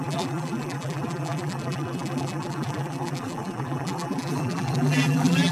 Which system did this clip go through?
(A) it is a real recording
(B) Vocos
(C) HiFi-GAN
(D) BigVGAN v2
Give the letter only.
D